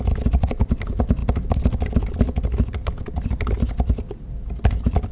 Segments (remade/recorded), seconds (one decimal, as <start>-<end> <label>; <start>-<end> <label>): 0.0-5.1 recorded